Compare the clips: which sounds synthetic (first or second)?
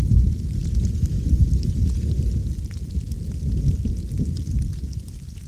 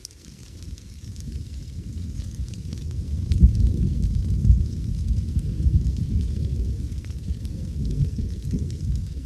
second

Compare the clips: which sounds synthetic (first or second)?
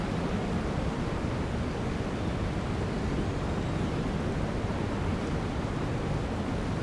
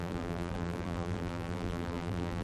second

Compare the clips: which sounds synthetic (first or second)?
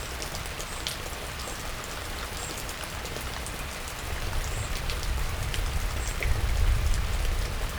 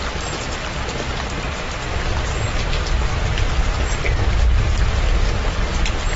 first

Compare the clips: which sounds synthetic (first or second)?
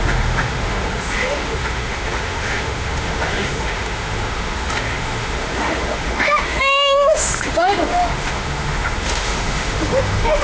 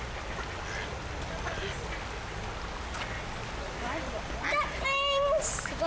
first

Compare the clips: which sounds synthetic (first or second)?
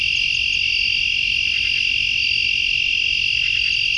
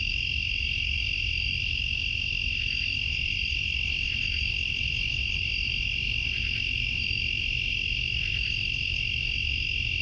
second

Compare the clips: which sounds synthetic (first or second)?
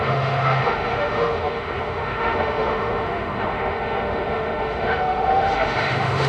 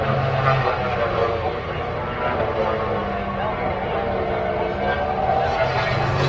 first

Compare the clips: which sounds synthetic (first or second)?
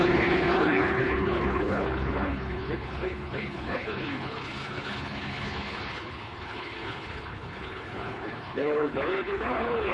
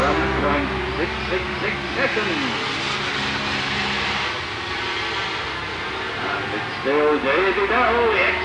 first